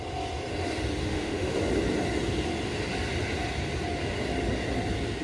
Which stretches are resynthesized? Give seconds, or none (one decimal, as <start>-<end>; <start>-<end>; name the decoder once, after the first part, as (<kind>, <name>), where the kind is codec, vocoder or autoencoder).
1.0-1.6 (autoencoder, DAC-VAE)